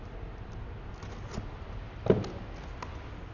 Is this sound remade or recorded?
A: recorded